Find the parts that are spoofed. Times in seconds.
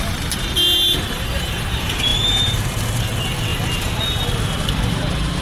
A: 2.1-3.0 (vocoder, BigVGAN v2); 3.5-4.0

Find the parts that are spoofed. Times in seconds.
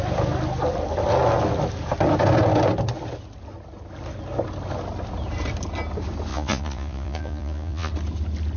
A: 6.3-7.9 (vocoder, Vocos)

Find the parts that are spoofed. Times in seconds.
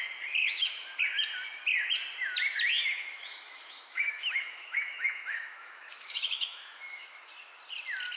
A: 0.4-1.0 (autoencoder, DAC-VAE); 2.9-7.3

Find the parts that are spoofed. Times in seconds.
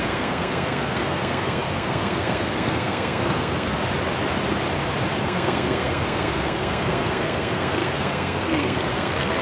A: 0.0-3.8 (codec, SNAC); 5.2-9.4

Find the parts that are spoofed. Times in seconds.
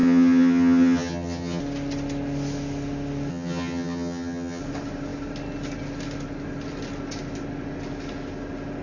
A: 0.0-1.6 (vocoder, HiFi-GAN); 3.3-4.6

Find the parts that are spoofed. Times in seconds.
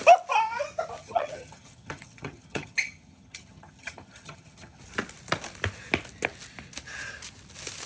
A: 1.0-4.8 (vocoder, HiFi-GAN)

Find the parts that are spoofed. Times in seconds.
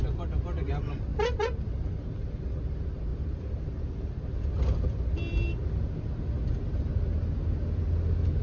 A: none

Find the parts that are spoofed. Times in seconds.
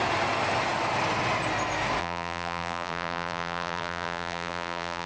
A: 2.0-5.1 (vocoder, BigVGAN v2)